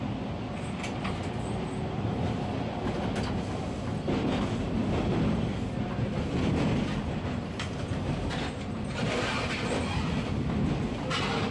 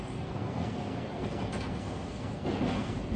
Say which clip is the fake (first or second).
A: second